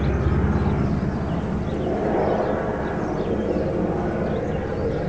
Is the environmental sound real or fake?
real